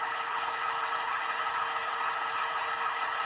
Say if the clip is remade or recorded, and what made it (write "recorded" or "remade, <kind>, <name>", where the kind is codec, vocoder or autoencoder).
remade, codec, HILCodec